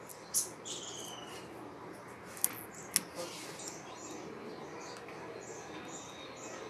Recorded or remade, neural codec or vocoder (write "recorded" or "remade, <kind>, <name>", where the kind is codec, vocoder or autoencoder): recorded